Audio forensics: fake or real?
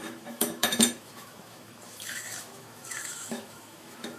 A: fake